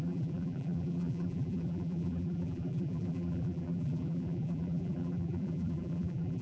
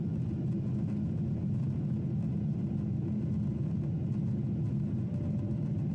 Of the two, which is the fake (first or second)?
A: first